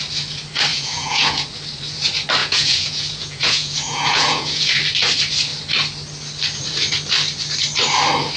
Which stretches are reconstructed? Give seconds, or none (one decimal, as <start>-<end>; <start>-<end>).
0.7-1.4; 2.4-4.8